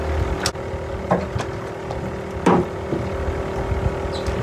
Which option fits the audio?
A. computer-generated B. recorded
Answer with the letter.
B